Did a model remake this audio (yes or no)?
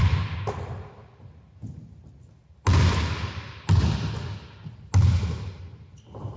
no